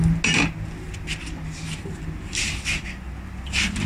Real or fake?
real